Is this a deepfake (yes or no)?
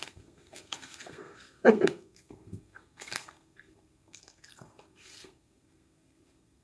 yes